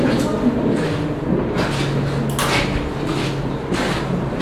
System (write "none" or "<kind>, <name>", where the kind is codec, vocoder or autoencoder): none